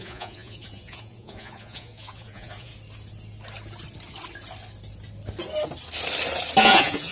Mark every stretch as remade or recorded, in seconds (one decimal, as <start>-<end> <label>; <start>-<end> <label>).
0.0-2.7 remade; 2.7-6.6 recorded; 6.6-7.1 remade